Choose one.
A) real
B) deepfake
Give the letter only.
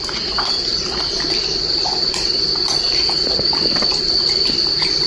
B